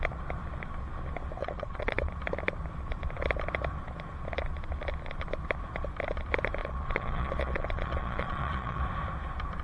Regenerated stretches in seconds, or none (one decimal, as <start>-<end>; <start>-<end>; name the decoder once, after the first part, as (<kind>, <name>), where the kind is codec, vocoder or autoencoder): 1.4-2.1 (vocoder, Vocos); 6.6-8.8